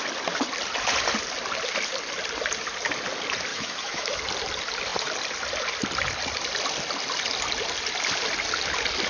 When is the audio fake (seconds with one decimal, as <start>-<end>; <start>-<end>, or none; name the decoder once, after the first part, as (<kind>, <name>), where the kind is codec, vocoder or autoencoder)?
3.5-4.2 (autoencoder, DAC-VAE)